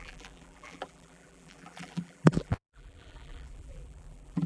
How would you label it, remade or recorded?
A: remade